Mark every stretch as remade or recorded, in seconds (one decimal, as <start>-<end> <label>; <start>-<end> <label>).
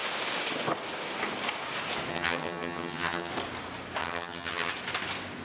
0.0-2.1 recorded; 2.1-3.3 remade; 3.3-4.0 recorded; 4.0-4.7 remade; 4.7-5.4 recorded